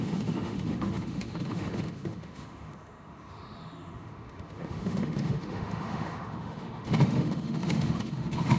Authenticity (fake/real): fake